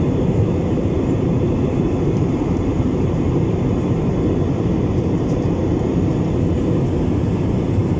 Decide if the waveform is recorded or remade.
remade